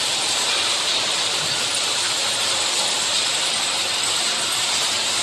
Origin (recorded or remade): recorded